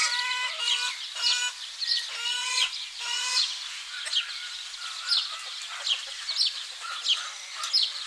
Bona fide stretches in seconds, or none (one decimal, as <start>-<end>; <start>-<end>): 0.0-2.4; 4.0-8.1

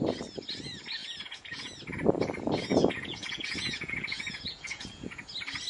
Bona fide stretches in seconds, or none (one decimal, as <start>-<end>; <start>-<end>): 0.0-1.0; 1.7-2.7; 5.2-5.7

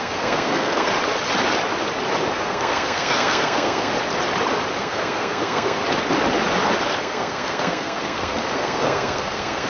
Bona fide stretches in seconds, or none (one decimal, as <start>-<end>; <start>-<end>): 0.9-2.3; 3.9-4.8; 5.8-7.0

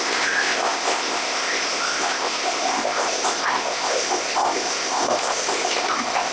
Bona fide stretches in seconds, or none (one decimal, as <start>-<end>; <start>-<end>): none